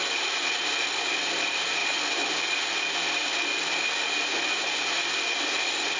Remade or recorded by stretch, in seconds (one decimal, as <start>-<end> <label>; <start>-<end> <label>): 0.0-6.0 recorded